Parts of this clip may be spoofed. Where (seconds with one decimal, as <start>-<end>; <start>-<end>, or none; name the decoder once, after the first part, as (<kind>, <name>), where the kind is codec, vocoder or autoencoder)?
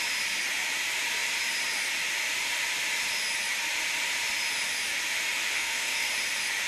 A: 5.5-6.1 (codec, SNAC)